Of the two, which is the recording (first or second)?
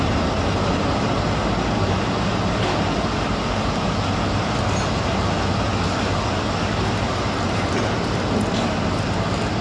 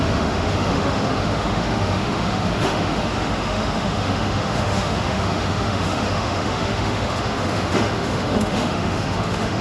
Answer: first